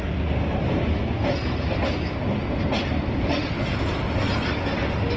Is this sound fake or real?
real